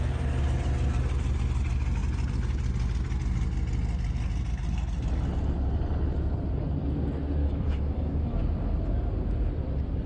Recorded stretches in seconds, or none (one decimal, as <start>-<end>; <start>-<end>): 0.0-7.4; 8.4-10.1